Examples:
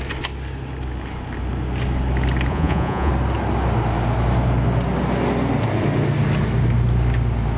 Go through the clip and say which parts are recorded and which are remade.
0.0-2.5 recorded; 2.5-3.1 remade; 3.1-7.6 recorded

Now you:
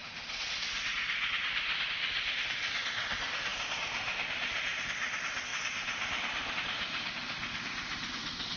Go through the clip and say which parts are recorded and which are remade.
0.0-3.5 recorded; 3.5-4.9 remade; 4.9-5.5 recorded; 5.5-6.5 remade; 6.5-8.6 recorded

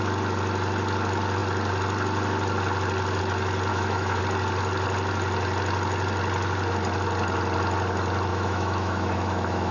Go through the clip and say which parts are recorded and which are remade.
0.0-3.7 recorded; 3.7-4.2 remade; 4.2-8.3 recorded; 8.3-9.7 remade